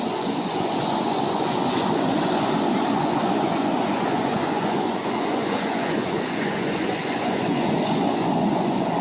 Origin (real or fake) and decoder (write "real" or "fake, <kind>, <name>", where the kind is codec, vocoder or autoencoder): fake, vocoder, Vocos